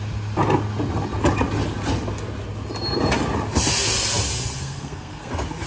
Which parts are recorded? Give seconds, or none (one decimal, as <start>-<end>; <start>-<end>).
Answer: 0.0-4.6; 5.3-5.7